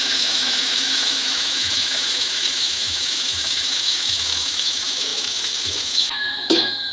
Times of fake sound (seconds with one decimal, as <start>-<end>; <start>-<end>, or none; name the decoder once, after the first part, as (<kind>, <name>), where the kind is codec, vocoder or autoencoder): 0.0-6.9 (autoencoder, DAC-VAE)